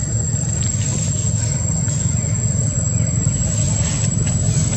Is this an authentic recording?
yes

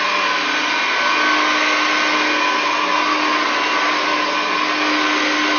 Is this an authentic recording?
yes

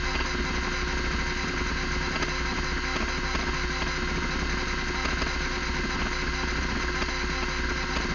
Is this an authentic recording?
yes